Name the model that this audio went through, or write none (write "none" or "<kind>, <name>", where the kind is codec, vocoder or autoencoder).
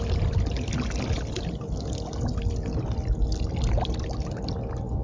none